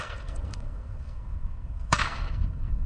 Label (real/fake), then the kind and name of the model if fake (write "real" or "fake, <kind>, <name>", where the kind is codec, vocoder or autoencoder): fake, codec, SNAC